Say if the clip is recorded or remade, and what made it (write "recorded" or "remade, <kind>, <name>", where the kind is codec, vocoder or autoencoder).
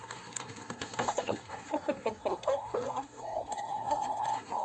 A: remade, codec, SNAC